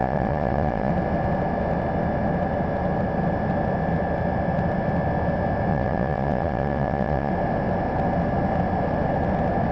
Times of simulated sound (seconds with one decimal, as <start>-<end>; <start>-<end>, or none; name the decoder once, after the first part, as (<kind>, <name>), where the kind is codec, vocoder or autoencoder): 0.0-0.9 (vocoder, Vocos); 5.7-7.3